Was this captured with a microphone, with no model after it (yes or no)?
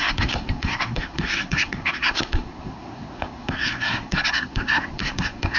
no